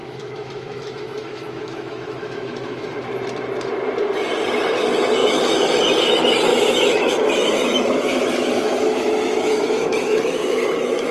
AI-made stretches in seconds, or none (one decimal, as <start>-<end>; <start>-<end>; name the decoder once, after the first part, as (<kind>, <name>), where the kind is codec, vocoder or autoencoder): 0.0-2.9 (autoencoder, DAC-VAE); 5.2-5.7; 6.5-11.1